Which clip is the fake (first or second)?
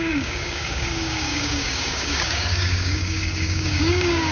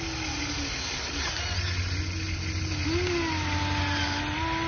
first